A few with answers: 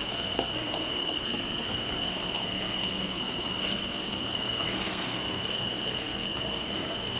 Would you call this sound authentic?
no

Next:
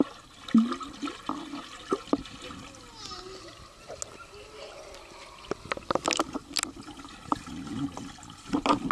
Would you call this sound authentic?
yes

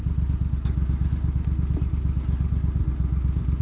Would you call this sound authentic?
yes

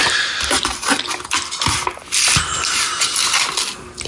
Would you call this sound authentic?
yes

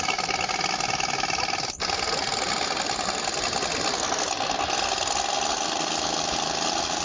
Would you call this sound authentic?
yes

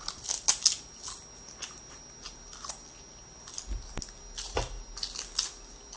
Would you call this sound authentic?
yes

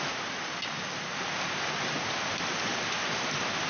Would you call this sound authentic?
yes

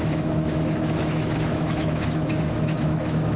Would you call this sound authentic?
no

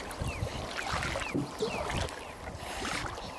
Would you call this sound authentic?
yes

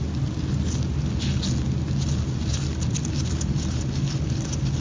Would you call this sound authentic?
yes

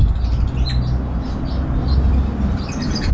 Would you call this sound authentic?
yes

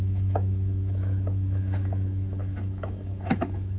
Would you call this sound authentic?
no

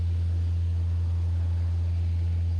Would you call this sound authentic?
yes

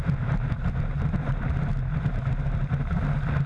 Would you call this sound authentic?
yes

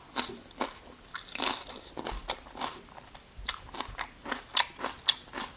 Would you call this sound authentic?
yes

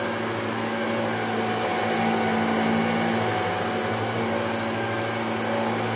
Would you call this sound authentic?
yes